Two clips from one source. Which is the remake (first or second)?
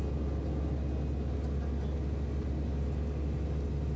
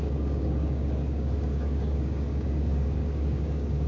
second